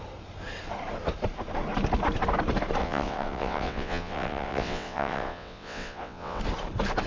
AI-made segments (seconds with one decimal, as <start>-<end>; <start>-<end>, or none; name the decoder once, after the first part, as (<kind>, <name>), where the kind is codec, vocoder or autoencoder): 2.8-6.4 (vocoder, WaveNeXt)